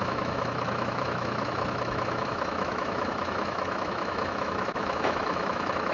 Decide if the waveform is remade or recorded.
remade